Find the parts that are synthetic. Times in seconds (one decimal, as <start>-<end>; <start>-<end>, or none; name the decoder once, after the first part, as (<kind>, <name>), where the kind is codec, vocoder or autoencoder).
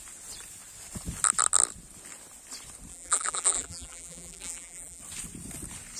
2.9-5.0 (vocoder, BigVGAN v2)